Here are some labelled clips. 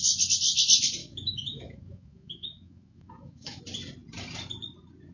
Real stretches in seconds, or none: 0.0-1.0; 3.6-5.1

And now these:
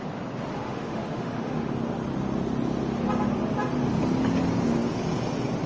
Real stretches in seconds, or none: 0.0-0.6; 1.7-5.7

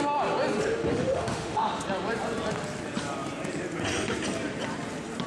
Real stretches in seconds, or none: 0.0-0.9; 1.8-5.3